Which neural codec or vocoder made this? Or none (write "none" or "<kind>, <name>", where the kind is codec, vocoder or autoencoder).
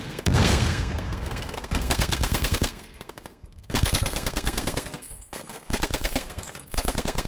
codec, SNAC